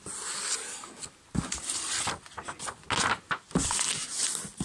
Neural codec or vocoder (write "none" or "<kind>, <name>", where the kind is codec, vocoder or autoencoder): none